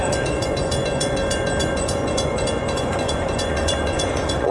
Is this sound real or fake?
fake